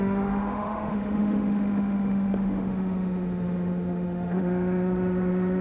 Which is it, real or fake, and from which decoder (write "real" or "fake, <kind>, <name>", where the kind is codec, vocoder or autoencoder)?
fake, autoencoder, DAC-VAE